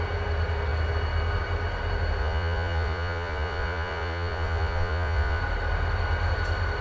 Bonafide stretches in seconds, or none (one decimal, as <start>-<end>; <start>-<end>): 0.0-2.2; 5.4-6.8